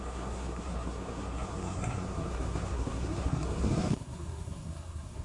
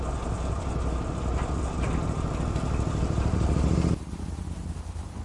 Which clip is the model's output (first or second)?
first